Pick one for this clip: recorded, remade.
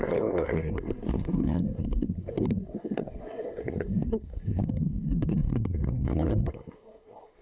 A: remade